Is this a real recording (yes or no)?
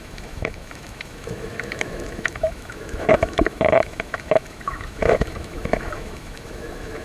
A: no